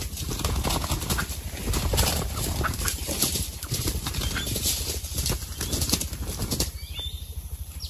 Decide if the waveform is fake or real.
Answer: real